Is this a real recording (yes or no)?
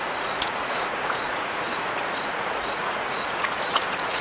no